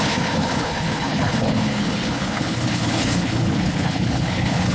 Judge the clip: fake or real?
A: fake